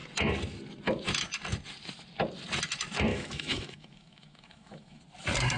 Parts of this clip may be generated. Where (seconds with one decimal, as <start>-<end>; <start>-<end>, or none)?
3.1-5.0